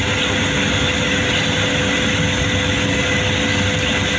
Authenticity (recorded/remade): recorded